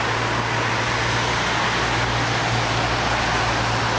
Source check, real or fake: real